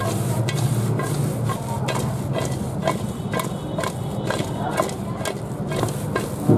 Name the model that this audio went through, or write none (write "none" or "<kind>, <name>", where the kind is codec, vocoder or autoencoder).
none